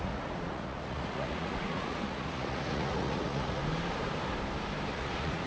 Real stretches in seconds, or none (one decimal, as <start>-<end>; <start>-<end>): 3.6-4.9